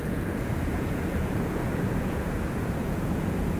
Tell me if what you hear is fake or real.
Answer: fake